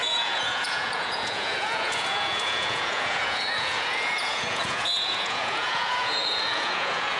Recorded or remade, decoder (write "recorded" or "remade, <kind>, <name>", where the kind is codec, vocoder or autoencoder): remade, vocoder, Vocos